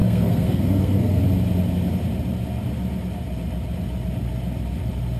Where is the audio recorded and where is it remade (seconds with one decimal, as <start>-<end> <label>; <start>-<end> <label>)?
0.0-1.2 remade; 1.2-5.2 recorded